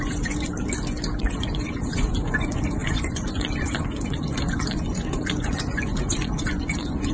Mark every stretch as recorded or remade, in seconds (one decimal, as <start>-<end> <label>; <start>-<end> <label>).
0.0-0.5 remade; 0.5-1.2 recorded; 1.2-7.1 remade